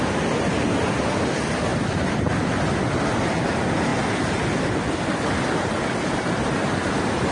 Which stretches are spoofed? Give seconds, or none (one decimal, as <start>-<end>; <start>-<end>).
none